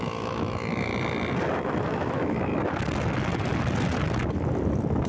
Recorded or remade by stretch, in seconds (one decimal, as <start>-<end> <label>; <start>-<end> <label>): 0.0-0.9 remade; 0.9-1.8 recorded; 1.8-2.5 remade; 2.5-5.1 recorded